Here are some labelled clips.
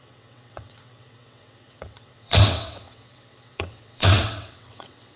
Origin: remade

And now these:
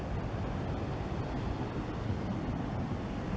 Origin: recorded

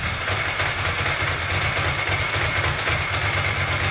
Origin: recorded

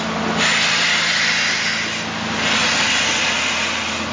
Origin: recorded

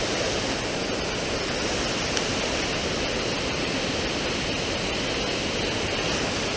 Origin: recorded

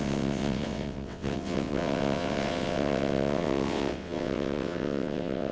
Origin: remade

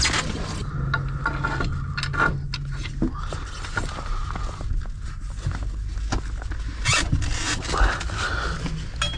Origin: recorded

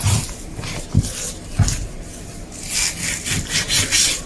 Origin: recorded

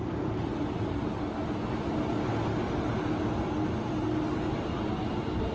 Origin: recorded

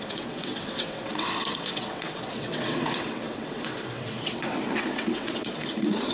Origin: remade